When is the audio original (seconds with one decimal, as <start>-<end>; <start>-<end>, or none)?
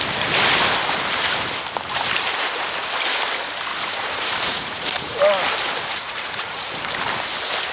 0.0-3.7; 5.2-5.9; 6.7-7.7